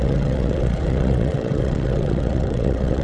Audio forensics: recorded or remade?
remade